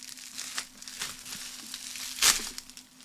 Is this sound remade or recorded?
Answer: recorded